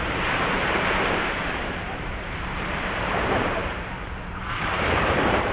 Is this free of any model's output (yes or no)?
no